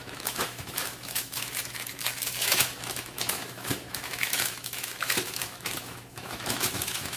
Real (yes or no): no